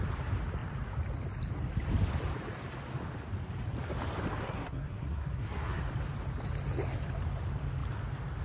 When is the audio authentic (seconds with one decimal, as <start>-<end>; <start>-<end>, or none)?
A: 0.0-4.4; 5.8-8.4